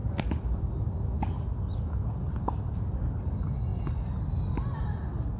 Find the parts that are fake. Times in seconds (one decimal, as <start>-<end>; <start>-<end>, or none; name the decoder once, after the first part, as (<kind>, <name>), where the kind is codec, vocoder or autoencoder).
none

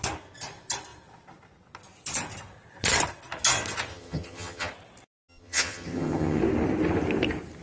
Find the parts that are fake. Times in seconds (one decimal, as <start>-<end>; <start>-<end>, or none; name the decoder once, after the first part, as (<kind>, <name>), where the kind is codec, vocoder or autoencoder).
3.9-4.7 (vocoder, HiFi-GAN); 5.3-6.4